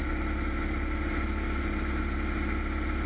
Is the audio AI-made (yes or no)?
no